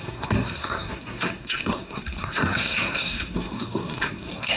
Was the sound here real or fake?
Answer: fake